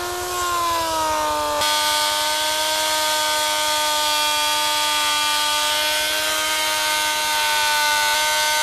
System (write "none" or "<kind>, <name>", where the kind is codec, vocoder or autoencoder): none